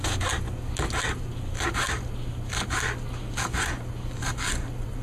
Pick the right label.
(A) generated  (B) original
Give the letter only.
B